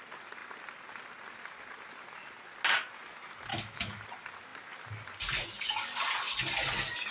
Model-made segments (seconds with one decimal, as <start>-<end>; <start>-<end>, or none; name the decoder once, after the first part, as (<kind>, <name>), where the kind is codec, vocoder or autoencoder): 3.5-4.0 (autoencoder, DAC-VAE)